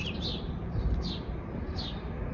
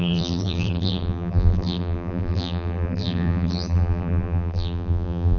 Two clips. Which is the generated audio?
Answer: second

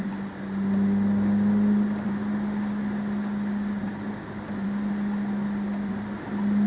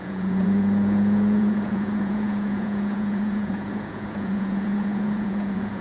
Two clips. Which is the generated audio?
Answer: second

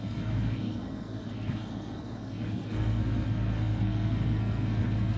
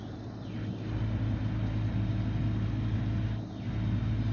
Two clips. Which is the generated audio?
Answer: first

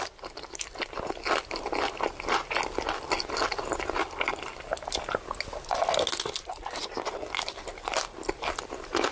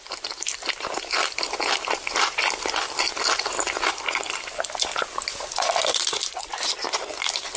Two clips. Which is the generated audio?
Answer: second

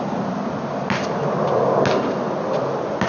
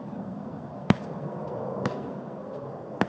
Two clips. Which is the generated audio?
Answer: second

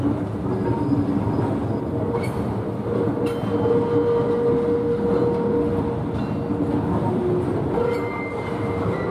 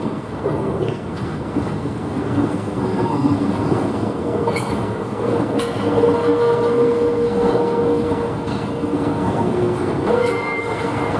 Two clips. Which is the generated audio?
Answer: second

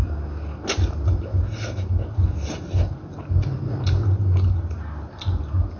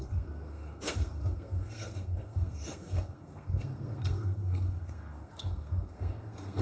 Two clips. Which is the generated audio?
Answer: second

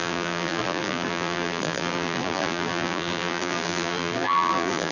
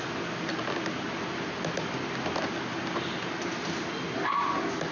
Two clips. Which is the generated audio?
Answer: first